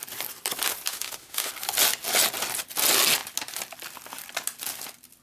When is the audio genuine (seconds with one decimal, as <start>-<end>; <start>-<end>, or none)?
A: 0.0-0.9; 1.5-5.2

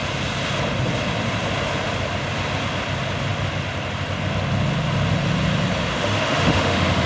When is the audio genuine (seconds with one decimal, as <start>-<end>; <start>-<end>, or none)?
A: 0.0-5.9

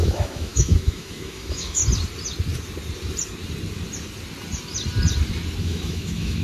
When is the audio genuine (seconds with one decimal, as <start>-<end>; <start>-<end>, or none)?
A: 1.8-5.6